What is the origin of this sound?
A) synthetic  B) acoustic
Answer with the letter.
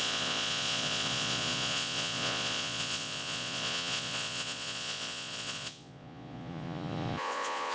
A